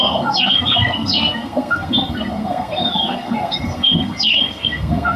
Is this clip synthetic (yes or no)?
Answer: yes